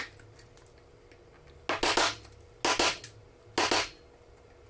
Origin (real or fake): real